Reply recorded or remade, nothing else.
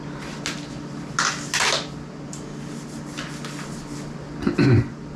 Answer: recorded